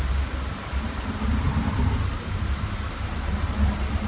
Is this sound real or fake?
real